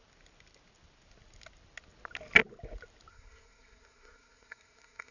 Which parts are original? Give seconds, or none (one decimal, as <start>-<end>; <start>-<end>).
0.0-3.1